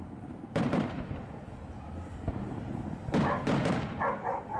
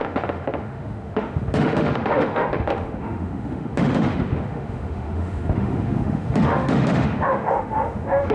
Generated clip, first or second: second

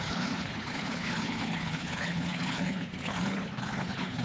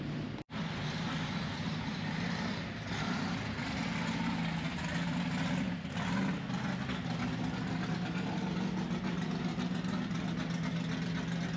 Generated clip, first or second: first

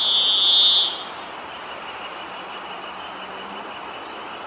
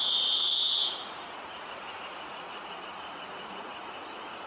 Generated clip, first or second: second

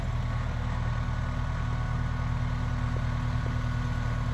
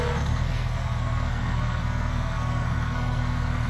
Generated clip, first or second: second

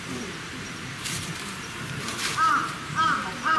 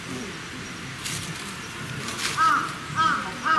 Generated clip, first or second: first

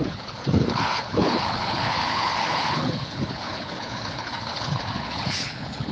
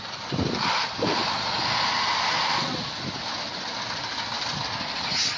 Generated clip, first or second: first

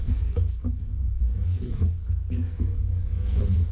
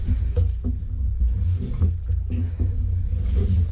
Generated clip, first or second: first